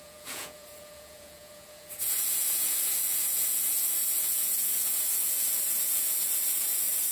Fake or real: fake